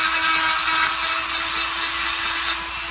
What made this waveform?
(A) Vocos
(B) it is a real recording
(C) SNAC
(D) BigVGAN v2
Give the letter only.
B